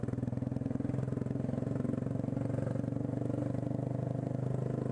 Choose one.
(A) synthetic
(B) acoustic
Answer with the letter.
B